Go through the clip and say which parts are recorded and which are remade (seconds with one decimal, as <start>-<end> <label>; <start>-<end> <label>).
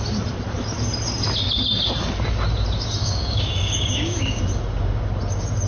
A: 0.0-3.0 recorded; 3.0-4.4 remade; 4.4-5.7 recorded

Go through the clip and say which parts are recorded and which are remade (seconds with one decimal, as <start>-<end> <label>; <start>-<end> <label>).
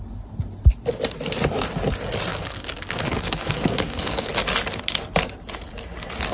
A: 0.0-2.3 recorded; 2.3-4.3 remade; 4.3-6.3 recorded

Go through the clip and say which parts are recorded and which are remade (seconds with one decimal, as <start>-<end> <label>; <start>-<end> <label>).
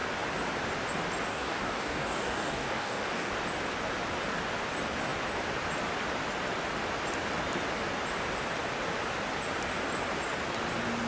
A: 0.0-1.3 recorded; 1.3-3.3 remade; 3.3-11.1 recorded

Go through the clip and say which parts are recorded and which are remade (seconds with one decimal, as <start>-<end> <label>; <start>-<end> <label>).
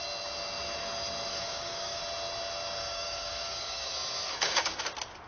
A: 0.0-1.3 recorded; 1.3-2.0 remade; 2.0-2.8 recorded; 2.8-3.9 remade; 3.9-4.3 recorded; 4.3-4.8 remade; 4.8-5.3 recorded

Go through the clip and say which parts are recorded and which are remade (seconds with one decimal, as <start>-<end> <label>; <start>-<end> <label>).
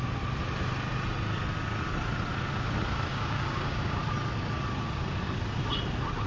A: 0.0-3.1 recorded; 3.1-4.0 remade; 4.0-6.3 recorded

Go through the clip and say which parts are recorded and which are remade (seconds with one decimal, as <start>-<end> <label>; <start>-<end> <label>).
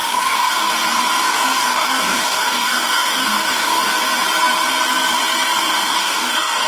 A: 0.0-0.7 remade; 0.7-1.2 recorded; 1.2-3.9 remade; 3.9-5.7 recorded; 5.7-6.7 remade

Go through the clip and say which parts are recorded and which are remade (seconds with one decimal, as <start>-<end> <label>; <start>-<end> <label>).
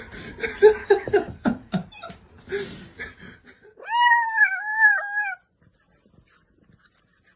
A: 0.0-0.8 recorded; 0.8-1.7 remade; 1.7-4.4 recorded; 4.4-4.9 remade; 4.9-7.4 recorded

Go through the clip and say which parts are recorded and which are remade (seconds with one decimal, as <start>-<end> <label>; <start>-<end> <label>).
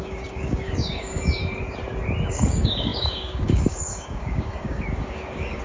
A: 0.0-1.4 remade; 1.4-2.3 recorded; 2.3-5.6 remade